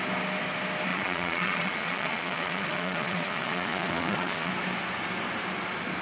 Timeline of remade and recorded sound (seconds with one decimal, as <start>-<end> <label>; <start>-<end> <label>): 0.0-0.9 recorded; 0.9-4.5 remade; 4.5-6.0 recorded